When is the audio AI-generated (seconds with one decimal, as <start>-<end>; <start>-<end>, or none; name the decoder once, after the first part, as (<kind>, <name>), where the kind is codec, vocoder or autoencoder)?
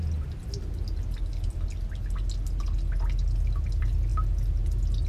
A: none